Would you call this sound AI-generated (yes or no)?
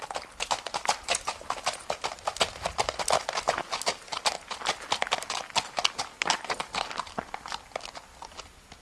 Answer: no